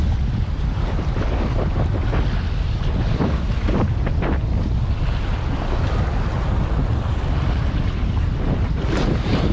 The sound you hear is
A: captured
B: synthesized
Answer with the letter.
A